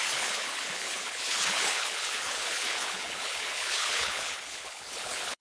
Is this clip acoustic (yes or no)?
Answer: no